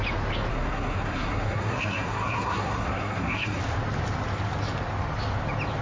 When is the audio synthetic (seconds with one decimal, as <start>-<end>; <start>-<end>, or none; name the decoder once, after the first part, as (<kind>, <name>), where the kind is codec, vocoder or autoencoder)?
0.5-3.6 (codec, SNAC)